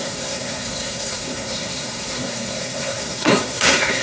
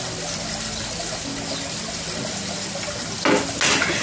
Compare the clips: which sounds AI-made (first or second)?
first